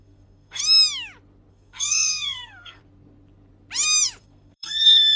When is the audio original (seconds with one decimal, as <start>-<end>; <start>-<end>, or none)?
0.6-1.5; 2.8-4.2